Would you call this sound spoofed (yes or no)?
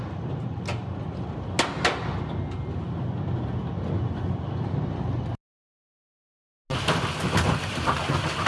no